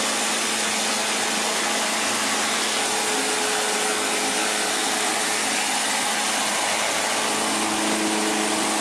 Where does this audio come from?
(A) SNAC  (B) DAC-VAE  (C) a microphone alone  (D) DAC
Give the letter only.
C